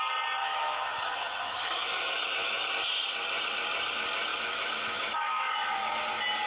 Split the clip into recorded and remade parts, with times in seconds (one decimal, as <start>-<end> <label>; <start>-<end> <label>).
0.0-0.4 recorded; 0.4-2.7 remade; 2.7-4.3 recorded; 4.3-6.0 remade; 6.0-6.5 recorded